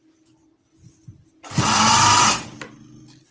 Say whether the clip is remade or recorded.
recorded